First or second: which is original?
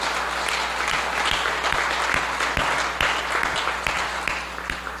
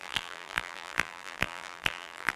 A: first